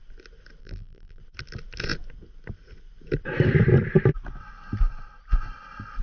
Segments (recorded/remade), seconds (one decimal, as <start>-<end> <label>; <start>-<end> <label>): 0.0-0.6 recorded; 0.6-1.2 remade; 1.2-6.0 recorded